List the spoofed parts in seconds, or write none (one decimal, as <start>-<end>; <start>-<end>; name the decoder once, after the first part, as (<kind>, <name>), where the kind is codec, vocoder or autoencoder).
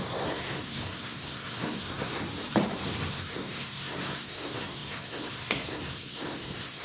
0.0-2.2 (codec, SNAC); 3.1-6.8